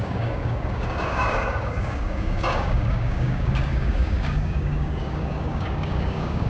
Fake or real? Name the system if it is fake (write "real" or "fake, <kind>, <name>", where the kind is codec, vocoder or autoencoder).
fake, codec, DAC